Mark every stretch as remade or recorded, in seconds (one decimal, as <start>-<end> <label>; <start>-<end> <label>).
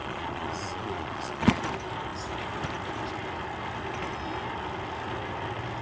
0.0-1.6 remade; 1.6-5.8 recorded